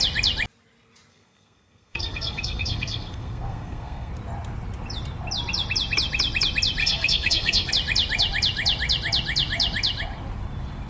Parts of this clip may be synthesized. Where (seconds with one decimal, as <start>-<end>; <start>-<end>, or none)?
1.1-4.1; 6.8-7.7